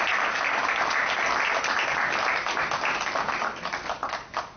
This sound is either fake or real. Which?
real